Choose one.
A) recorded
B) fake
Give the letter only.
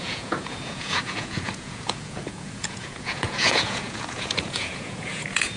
B